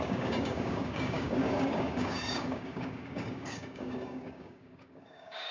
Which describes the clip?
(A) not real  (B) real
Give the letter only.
A